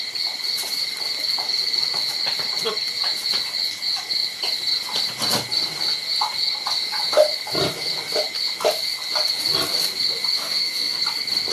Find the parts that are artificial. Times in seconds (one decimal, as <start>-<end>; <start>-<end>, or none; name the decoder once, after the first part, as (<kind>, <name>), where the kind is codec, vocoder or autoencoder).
10.4-11.0 (autoencoder, DAC-VAE)